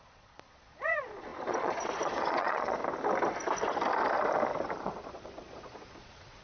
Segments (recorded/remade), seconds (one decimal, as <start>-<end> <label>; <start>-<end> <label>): 0.0-2.8 remade; 2.8-4.8 recorded; 4.8-6.4 remade